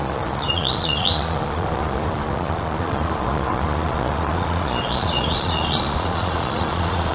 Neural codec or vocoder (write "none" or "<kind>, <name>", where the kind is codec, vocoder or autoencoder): vocoder, Vocos